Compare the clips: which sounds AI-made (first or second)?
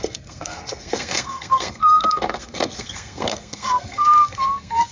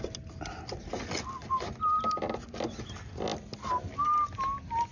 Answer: first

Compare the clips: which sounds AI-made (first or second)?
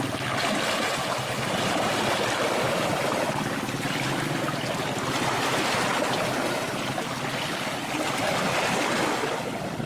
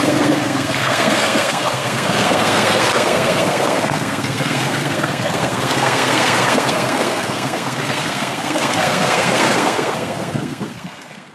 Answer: second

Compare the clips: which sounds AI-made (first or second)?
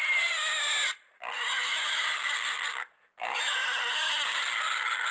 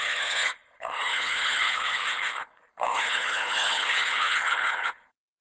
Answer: second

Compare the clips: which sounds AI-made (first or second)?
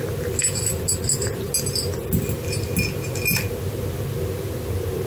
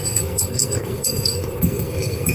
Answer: second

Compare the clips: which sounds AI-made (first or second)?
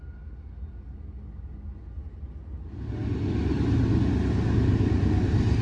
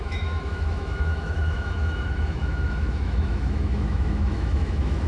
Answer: second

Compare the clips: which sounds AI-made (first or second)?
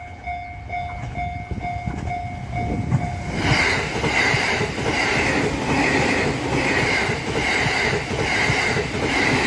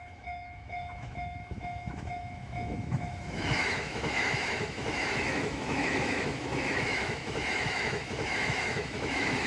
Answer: second